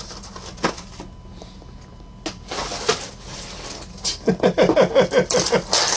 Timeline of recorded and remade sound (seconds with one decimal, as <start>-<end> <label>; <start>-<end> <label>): 0.0-2.9 recorded; 2.9-3.7 remade; 3.7-6.0 recorded